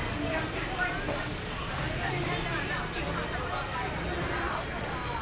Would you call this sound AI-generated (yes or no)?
no